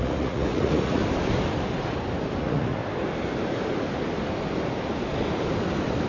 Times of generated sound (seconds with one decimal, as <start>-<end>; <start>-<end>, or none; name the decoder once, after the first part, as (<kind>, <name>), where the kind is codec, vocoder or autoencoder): 0.0-1.0 (vocoder, Vocos); 2.4-2.8